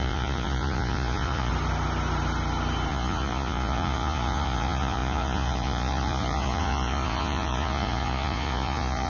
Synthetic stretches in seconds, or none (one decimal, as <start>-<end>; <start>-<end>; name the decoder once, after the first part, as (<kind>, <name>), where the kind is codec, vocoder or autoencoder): 0.0-1.5 (vocoder, Vocos); 2.9-9.1